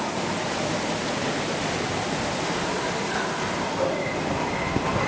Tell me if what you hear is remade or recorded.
recorded